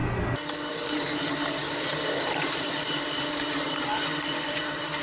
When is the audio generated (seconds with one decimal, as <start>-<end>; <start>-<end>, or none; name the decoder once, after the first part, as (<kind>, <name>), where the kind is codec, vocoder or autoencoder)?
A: 0.7-5.0 (vocoder, BigVGAN v2)